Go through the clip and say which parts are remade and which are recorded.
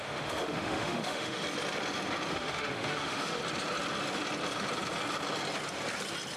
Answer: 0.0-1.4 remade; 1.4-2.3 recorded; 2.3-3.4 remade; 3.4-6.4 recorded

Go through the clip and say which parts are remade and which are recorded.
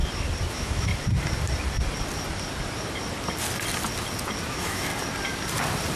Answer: 0.0-0.5 recorded; 0.5-0.9 remade; 0.9-4.5 recorded; 4.5-4.9 remade; 4.9-6.0 recorded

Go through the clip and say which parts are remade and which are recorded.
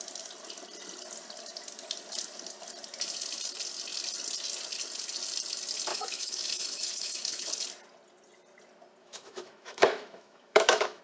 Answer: 0.0-5.9 recorded; 5.9-7.5 remade; 7.5-9.0 recorded; 9.0-11.0 remade